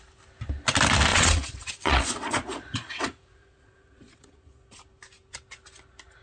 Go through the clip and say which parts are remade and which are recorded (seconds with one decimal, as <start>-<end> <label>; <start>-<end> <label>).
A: 0.0-1.1 recorded; 1.1-4.8 remade; 4.8-6.2 recorded